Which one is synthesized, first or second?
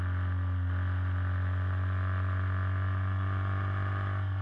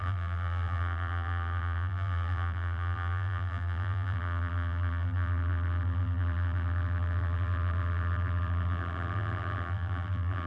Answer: second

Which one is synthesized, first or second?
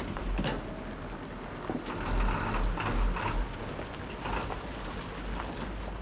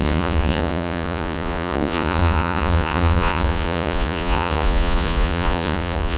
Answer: second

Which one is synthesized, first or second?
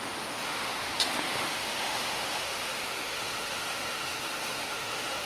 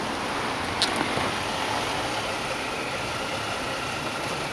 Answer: first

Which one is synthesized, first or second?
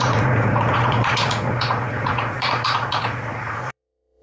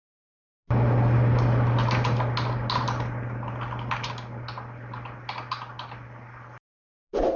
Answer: first